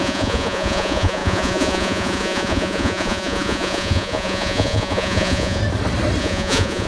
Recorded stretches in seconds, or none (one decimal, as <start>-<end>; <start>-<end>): 5.6-6.2